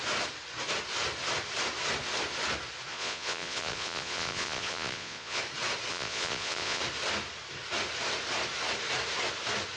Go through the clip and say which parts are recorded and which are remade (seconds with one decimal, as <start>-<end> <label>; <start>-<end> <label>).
0.0-2.9 recorded; 2.9-5.4 remade; 5.4-5.9 recorded; 5.9-6.8 remade; 6.8-9.8 recorded

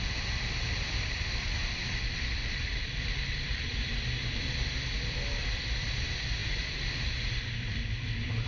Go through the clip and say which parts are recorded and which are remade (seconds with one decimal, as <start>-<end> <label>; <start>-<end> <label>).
0.0-8.5 remade

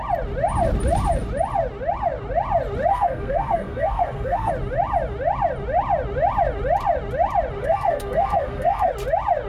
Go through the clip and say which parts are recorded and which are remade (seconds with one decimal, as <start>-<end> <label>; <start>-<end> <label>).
0.0-2.9 recorded; 2.9-4.5 remade; 4.5-7.6 recorded; 7.6-8.9 remade; 8.9-9.5 recorded

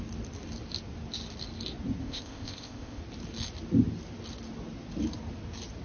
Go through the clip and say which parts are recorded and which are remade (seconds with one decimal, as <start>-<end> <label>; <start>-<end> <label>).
0.0-2.0 recorded; 2.0-3.0 remade; 3.0-5.8 recorded

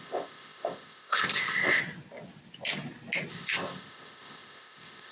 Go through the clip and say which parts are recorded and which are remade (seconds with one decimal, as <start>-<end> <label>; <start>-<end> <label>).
0.0-1.8 remade; 1.8-3.3 recorded; 3.3-5.1 remade

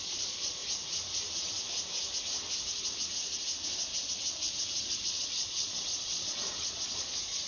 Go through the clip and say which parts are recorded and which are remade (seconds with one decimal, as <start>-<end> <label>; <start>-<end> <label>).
0.0-0.6 remade; 0.6-4.8 recorded; 4.8-7.5 remade